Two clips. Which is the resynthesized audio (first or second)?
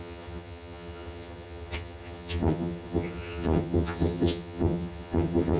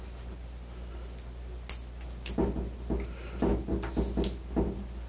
first